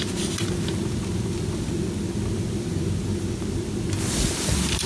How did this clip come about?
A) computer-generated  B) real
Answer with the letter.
B